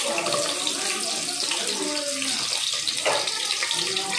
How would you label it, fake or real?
real